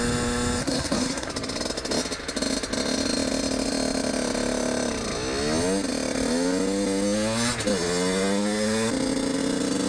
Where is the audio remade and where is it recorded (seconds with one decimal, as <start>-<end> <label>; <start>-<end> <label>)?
0.0-0.6 recorded; 0.6-1.3 remade; 1.3-9.9 recorded